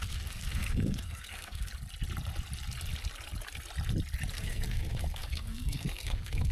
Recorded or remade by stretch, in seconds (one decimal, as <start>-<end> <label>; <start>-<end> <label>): 0.0-1.7 remade; 1.7-4.3 recorded; 4.3-6.5 remade